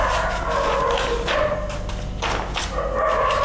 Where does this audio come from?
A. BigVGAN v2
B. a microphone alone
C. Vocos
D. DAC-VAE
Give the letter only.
B